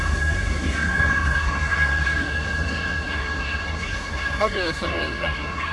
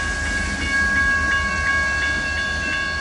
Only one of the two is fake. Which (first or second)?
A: first